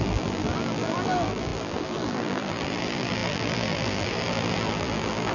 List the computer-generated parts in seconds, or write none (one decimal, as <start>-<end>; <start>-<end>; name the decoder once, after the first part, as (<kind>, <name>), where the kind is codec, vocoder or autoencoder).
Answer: 0.0-5.3 (vocoder, BigVGAN v2)